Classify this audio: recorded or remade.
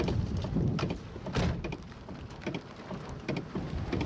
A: recorded